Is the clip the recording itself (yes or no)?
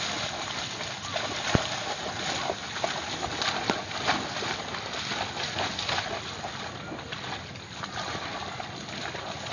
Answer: yes